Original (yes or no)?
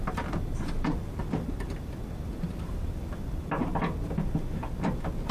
yes